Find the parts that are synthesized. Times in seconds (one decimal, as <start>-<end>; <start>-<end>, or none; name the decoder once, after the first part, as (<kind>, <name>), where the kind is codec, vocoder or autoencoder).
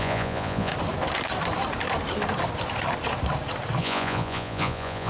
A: 0.0-0.7 (vocoder, Vocos); 3.8-5.1